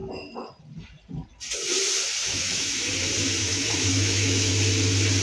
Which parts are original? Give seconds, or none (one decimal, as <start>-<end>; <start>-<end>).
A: 0.0-2.2; 2.9-3.4; 4.5-5.2